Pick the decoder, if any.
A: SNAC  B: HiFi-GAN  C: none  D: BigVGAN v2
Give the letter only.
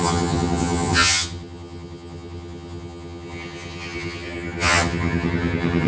B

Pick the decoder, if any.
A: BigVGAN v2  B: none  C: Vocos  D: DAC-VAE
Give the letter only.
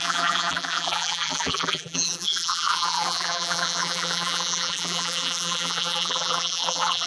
A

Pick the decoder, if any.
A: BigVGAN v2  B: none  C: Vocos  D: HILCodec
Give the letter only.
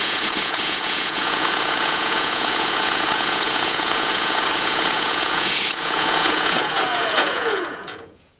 C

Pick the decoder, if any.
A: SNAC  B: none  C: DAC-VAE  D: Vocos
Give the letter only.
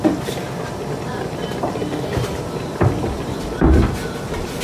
B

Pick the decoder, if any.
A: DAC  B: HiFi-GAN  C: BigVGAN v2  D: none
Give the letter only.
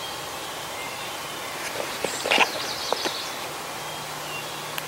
D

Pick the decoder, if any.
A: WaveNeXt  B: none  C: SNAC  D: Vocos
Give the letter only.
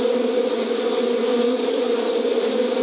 B